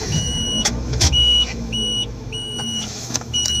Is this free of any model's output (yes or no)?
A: no